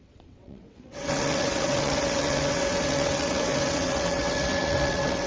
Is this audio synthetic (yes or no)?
yes